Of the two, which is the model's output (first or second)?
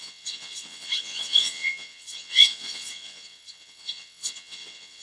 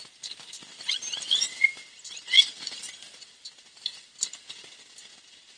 first